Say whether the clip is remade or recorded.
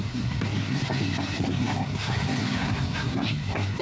remade